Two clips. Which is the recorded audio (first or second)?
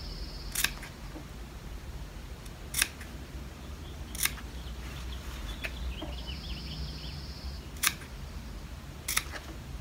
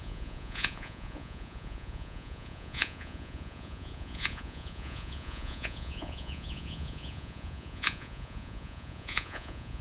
first